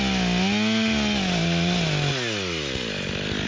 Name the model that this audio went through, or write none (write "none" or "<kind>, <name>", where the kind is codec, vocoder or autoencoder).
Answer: none